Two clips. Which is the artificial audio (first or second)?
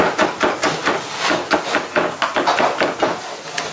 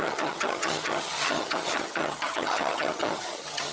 second